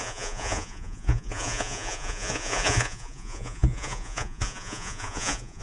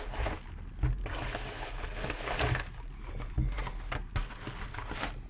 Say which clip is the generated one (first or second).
first